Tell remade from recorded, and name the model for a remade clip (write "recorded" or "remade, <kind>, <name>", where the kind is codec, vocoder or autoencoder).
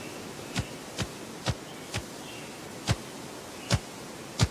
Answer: recorded